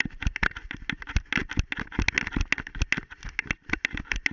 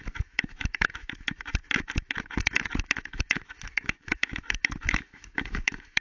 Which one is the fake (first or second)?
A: second